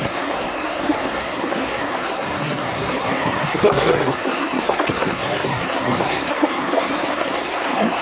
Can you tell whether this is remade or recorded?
remade